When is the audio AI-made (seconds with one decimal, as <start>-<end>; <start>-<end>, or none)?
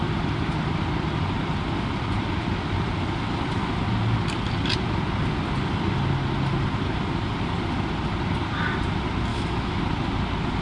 9.3-9.8